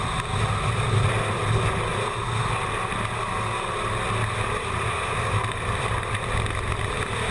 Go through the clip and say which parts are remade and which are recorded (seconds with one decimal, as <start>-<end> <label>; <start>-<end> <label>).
0.0-7.3 recorded